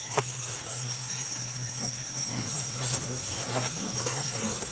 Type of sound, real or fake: fake